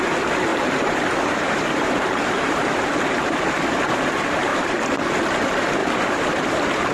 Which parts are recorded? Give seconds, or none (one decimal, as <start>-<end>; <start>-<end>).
0.0-0.5; 2.7-4.5; 5.1-6.9

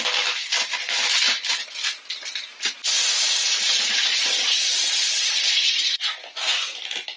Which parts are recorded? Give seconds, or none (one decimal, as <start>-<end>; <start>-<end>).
0.0-3.0; 6.8-7.2

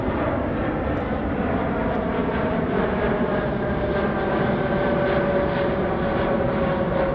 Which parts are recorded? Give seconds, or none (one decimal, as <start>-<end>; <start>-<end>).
0.0-7.1

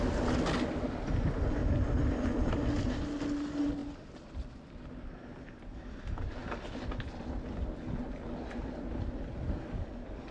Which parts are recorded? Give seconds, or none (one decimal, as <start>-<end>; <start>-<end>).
0.0-3.8; 5.8-10.3

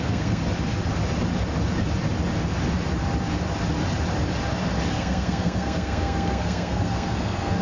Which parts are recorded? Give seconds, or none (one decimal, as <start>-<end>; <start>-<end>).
0.4-4.9

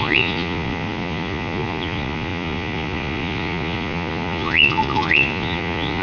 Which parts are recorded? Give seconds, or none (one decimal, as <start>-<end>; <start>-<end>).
none

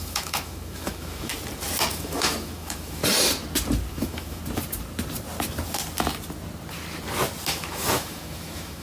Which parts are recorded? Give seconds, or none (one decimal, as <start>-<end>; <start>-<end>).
1.3-1.9; 3.0-3.9; 4.4-7.5